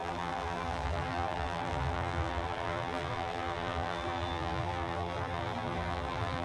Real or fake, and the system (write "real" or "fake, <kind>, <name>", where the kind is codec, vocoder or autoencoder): fake, vocoder, BigVGAN v2